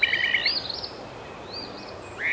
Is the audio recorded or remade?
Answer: recorded